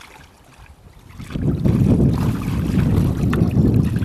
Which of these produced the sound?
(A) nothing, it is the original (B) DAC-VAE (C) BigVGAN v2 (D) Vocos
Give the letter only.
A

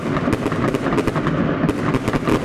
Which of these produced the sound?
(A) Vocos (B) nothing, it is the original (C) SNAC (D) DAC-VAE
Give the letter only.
B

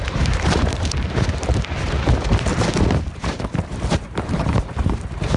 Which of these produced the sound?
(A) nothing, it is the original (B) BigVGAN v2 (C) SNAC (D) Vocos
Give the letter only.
B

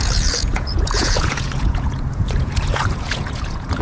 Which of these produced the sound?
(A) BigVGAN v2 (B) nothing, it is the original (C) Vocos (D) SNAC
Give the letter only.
C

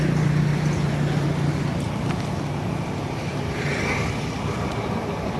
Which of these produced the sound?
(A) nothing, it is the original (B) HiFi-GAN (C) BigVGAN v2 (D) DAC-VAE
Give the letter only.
A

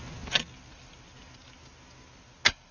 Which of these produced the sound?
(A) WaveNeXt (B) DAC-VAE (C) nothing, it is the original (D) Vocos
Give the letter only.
C